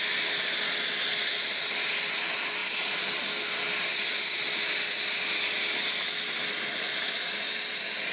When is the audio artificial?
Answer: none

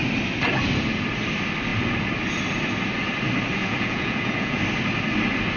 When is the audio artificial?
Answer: 3.6-4.6 (vocoder, Vocos)

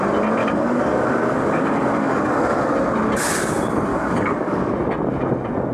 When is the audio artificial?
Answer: 0.4-2.7 (codec, DAC); 3.9-4.7

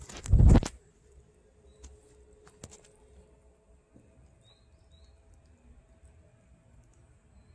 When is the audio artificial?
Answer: none

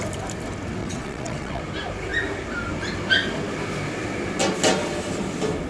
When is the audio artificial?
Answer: 0.8-1.6 (vocoder, WaveNeXt)

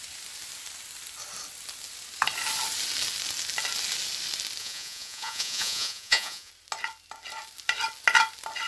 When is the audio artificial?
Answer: 4.6-6.5 (vocoder, Vocos)

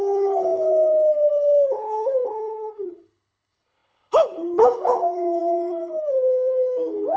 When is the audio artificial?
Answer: 0.0-7.2 (codec, HILCodec)